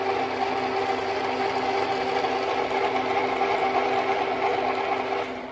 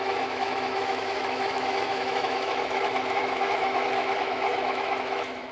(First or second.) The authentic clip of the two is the first